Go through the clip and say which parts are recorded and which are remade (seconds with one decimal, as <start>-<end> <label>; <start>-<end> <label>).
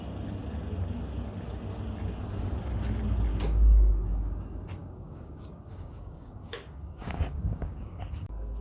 0.0-3.3 recorded; 3.3-3.9 remade; 3.9-4.8 recorded; 4.8-8.0 remade; 8.0-8.6 recorded